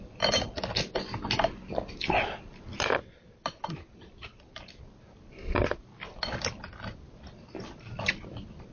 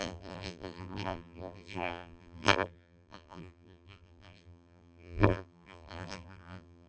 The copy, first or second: second